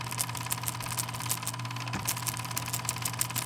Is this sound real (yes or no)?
yes